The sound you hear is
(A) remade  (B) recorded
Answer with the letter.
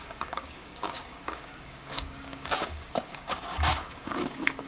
A